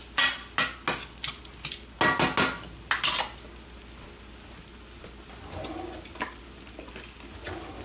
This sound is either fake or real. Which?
real